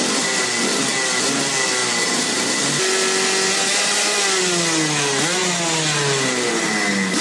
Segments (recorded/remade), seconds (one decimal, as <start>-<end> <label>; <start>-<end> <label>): 0.0-7.2 recorded